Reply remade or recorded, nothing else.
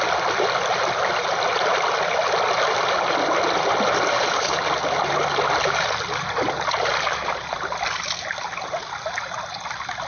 recorded